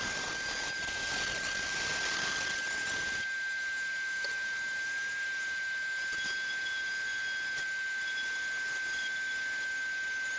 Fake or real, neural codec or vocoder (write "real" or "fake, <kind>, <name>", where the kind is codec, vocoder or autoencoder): real